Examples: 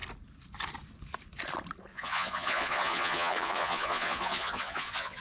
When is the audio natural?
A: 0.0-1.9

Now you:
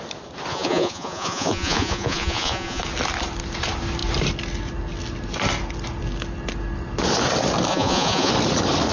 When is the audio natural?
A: 0.0-0.5; 2.8-7.7; 8.3-8.9